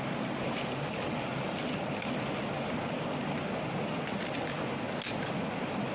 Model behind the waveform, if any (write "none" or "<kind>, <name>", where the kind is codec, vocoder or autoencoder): none